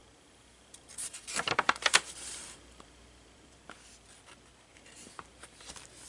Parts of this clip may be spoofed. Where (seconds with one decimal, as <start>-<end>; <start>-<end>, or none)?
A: 0.0-3.6; 4.7-5.6